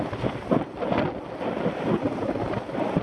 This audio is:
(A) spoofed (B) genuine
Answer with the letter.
B